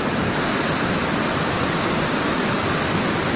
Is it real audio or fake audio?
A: real